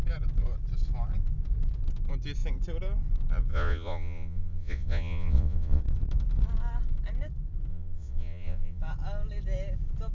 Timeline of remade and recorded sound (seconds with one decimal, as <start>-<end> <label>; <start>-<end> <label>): 0.0-3.5 recorded; 3.5-5.8 remade; 5.8-7.7 recorded; 7.7-8.8 remade; 8.8-10.1 recorded